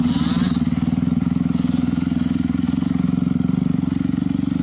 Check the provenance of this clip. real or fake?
real